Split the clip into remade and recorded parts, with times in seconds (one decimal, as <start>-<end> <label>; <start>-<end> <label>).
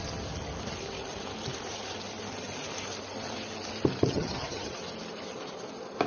0.0-4.1 recorded; 4.1-4.7 remade; 4.7-6.1 recorded